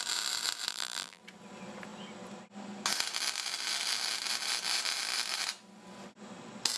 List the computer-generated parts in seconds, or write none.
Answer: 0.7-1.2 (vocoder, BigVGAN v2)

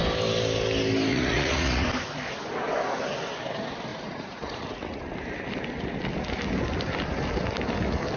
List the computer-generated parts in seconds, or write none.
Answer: 1.1-1.9 (vocoder, Vocos); 3.9-5.0

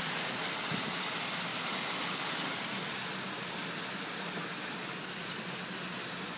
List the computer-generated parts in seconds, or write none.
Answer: none

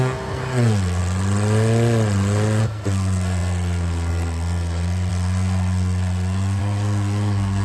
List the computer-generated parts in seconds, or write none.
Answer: 0.0-1.0 (codec, SNAC); 2.6-7.6

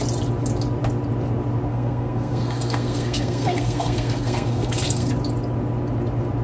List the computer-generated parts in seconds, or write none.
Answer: 1.7-5.1 (codec, SNAC)

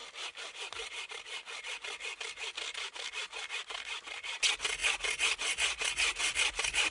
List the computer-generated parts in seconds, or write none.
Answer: none